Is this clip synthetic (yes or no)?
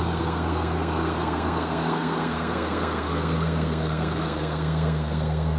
yes